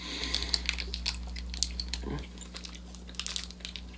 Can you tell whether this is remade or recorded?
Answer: recorded